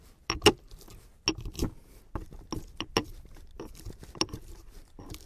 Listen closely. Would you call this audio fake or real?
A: real